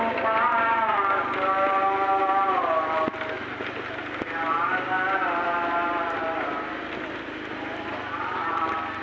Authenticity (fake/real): real